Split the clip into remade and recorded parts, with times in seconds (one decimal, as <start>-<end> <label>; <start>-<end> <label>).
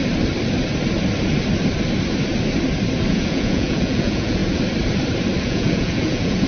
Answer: 0.0-3.1 recorded; 3.1-4.4 remade; 4.4-5.4 recorded; 5.4-6.5 remade